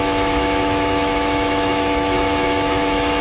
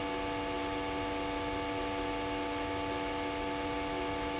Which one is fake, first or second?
first